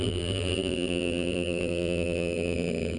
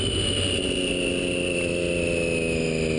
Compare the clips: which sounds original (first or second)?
second